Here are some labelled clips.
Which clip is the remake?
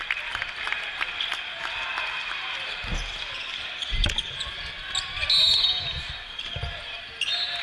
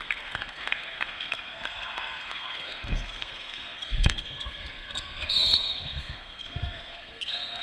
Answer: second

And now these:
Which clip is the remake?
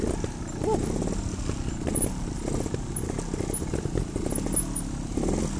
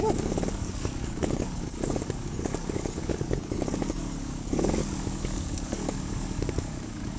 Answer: second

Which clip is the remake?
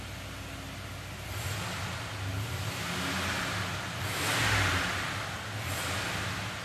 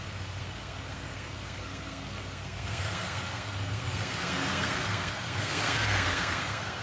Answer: second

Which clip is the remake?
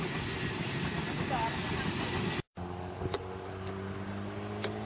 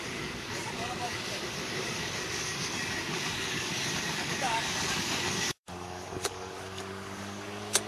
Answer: second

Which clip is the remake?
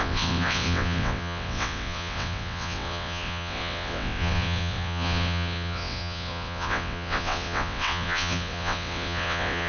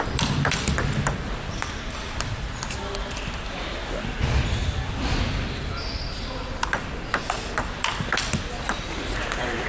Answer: first